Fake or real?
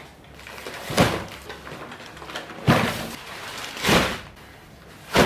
real